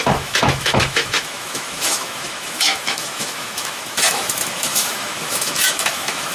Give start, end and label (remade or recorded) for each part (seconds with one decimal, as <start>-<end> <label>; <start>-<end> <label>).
0.0-6.3 remade

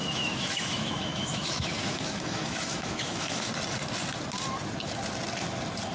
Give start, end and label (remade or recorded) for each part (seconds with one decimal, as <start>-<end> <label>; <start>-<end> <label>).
0.0-3.5 remade; 3.5-5.9 recorded

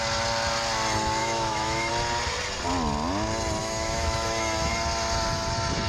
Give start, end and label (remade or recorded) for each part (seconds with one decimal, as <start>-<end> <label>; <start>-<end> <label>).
0.0-1.2 recorded; 1.2-1.9 remade; 1.9-3.6 recorded; 3.6-4.7 remade; 4.7-5.9 recorded

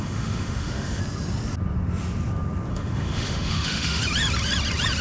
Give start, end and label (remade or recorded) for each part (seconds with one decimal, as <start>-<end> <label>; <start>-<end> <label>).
0.0-1.0 remade; 1.0-2.7 recorded; 2.7-4.0 remade; 4.0-5.0 recorded

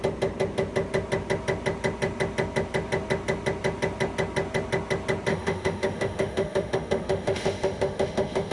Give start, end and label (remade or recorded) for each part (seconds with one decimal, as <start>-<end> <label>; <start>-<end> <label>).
0.0-5.3 recorded; 5.3-8.5 remade

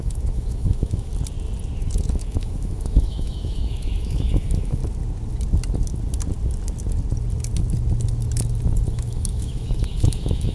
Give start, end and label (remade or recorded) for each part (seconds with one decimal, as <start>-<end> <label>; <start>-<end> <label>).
0.0-1.1 remade; 1.1-2.1 recorded; 2.1-4.8 remade; 4.8-8.9 recorded; 8.9-10.5 remade

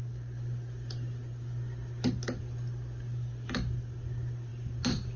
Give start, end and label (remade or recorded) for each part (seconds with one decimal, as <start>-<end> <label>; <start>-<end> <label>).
0.0-5.2 recorded